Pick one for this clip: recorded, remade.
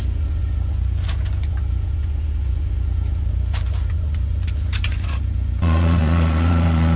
remade